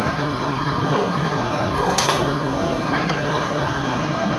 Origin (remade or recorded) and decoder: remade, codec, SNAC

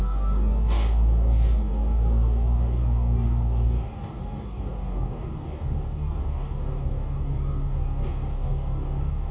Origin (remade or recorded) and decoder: remade, codec, DAC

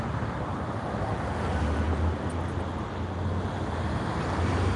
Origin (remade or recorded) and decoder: recorded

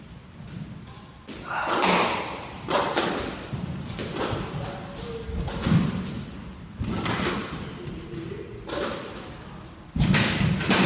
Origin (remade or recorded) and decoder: recorded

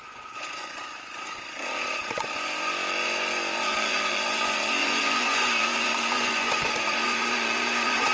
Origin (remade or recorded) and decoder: remade, vocoder, Vocos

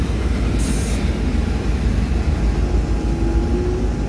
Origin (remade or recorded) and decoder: recorded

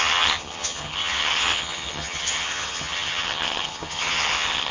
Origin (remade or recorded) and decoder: remade, vocoder, HiFi-GAN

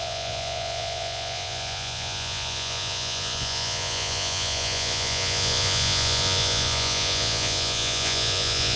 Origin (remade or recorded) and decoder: remade, vocoder, Vocos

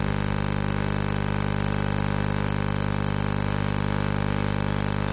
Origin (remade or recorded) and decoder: recorded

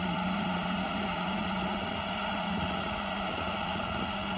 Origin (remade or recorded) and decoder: remade, vocoder, Vocos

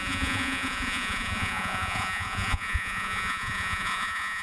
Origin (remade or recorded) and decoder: remade, vocoder, Vocos